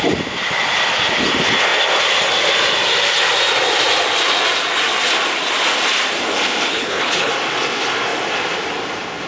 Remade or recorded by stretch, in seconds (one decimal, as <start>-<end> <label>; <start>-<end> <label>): 0.0-6.7 recorded; 6.7-7.3 remade; 7.3-9.3 recorded